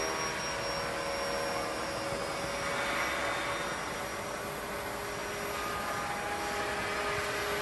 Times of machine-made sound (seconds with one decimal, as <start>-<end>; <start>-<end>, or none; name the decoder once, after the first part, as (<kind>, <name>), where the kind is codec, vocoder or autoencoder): none